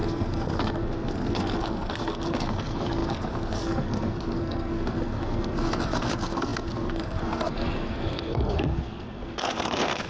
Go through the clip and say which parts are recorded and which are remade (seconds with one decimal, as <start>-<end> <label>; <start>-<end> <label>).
0.0-10.1 remade